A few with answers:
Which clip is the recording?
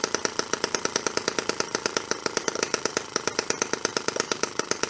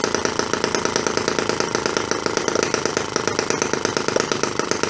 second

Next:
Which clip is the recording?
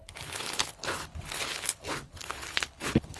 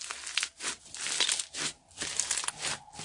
second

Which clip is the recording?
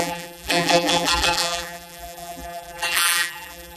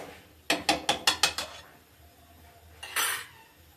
second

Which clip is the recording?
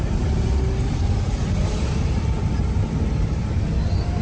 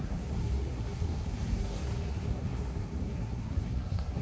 first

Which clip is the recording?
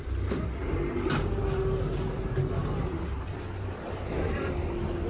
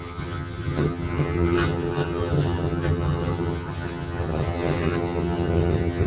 first